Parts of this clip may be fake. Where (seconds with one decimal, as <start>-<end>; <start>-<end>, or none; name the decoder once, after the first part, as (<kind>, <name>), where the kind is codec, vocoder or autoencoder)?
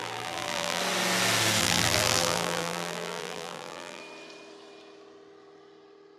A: 0.0-0.8 (vocoder, BigVGAN v2); 1.6-4.0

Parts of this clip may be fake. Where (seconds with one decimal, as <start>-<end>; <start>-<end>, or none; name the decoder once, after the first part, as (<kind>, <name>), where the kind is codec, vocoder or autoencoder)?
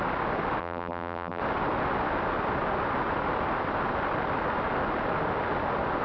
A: 0.6-1.4 (vocoder, BigVGAN v2)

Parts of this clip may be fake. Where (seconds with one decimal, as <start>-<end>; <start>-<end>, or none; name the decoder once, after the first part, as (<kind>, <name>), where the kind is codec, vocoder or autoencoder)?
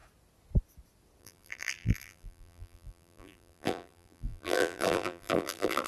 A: 1.2-5.9 (vocoder, BigVGAN v2)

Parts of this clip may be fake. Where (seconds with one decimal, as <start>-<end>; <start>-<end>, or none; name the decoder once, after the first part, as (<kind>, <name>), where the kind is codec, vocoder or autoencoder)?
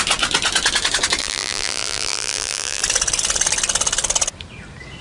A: 1.2-2.8 (vocoder, BigVGAN v2)